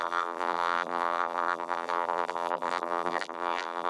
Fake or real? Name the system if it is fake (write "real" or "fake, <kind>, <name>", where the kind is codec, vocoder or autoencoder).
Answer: fake, vocoder, BigVGAN v2